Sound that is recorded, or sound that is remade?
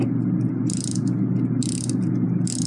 recorded